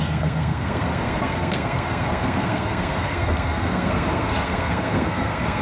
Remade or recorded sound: remade